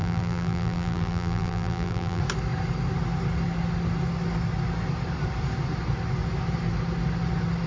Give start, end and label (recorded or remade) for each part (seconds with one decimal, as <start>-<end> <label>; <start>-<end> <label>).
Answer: 0.0-2.2 remade; 2.2-7.7 recorded